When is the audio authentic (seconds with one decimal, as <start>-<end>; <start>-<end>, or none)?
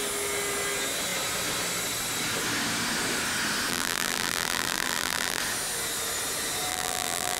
0.0-3.7; 5.4-6.7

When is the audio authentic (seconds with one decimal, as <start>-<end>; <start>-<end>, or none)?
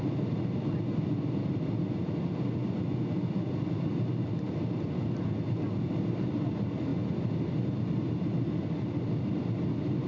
0.0-10.1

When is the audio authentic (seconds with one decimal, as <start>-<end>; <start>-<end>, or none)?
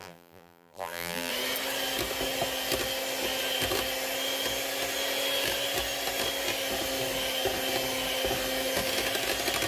1.3-9.7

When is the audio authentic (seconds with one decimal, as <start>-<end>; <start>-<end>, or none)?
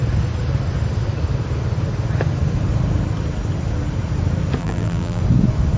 0.0-4.6; 5.2-5.8